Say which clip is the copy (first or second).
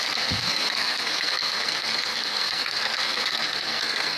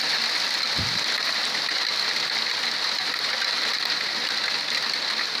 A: first